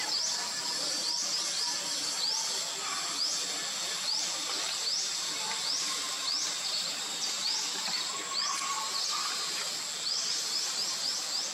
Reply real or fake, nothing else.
real